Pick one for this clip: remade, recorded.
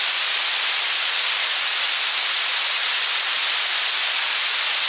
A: recorded